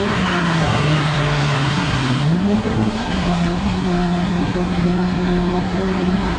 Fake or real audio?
fake